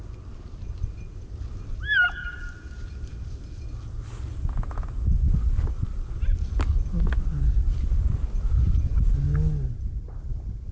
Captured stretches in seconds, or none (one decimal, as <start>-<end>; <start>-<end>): 0.0-10.7